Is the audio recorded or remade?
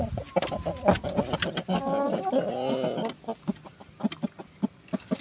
recorded